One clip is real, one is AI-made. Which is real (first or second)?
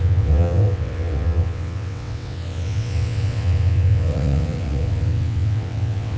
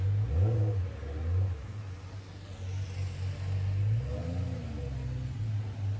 second